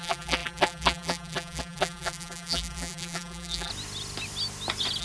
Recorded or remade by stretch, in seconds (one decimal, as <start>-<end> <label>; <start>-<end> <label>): 0.0-3.7 remade; 3.7-5.0 recorded